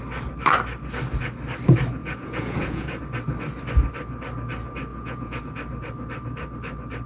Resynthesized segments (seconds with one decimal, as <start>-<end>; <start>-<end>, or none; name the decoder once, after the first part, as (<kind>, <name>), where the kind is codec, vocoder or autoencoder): 2.0-3.0 (vocoder, Vocos); 4.9-5.4